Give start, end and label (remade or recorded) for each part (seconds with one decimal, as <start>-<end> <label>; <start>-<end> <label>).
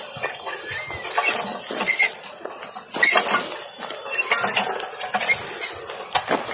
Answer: 0.0-1.8 recorded; 1.8-2.6 remade; 2.6-6.5 recorded